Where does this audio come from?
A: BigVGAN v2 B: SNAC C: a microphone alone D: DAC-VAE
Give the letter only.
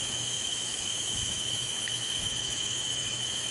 D